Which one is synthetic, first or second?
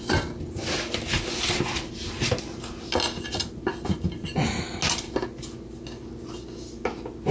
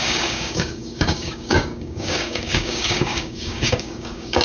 second